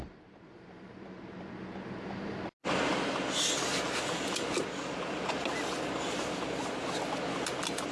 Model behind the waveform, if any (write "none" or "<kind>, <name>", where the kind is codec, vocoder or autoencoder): none